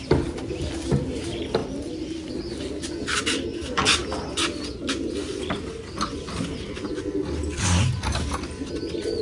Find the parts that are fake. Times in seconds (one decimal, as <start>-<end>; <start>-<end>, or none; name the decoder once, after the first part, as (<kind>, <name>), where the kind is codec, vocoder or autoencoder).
none